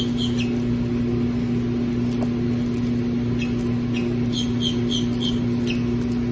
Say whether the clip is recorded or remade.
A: recorded